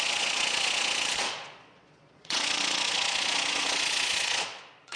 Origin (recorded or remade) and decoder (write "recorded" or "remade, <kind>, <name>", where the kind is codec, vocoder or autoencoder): remade, vocoder, Vocos